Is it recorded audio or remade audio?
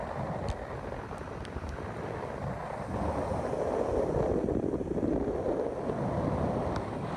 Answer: recorded